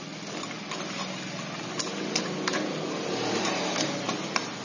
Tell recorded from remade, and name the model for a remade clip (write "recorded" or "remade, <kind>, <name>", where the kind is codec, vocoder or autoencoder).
recorded